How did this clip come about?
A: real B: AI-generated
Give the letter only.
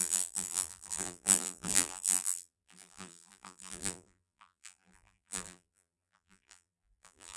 B